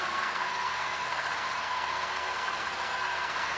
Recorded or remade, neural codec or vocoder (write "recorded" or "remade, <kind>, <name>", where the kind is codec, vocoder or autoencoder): remade, codec, SNAC